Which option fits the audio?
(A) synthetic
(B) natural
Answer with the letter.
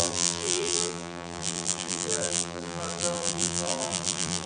A